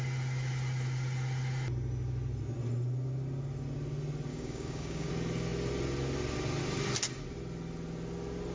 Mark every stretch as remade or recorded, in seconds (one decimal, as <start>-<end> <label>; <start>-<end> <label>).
0.0-4.3 recorded; 4.3-5.1 remade; 5.1-8.5 recorded